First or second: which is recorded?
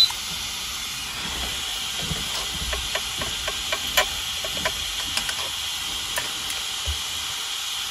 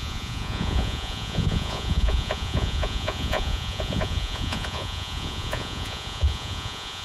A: first